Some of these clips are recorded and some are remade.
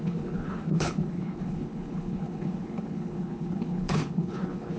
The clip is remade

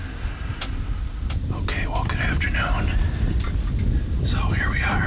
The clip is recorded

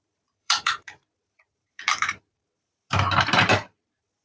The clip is remade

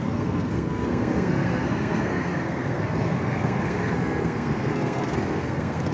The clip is remade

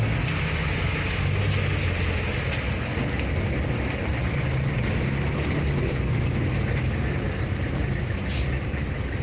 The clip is recorded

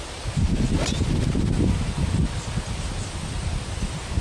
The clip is recorded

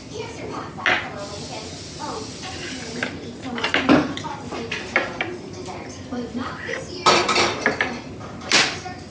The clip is recorded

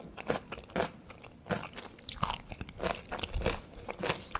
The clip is recorded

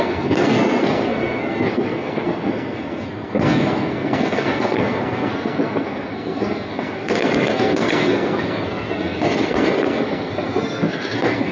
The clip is remade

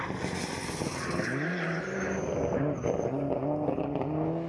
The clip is recorded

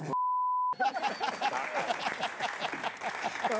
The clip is recorded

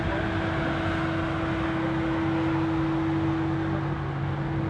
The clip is recorded